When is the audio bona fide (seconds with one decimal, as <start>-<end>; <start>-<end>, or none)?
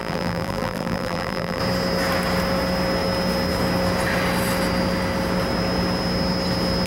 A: 1.6-6.9